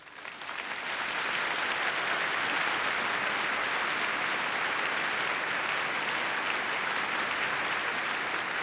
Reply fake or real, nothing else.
real